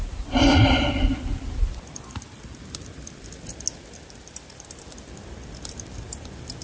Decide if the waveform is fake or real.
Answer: real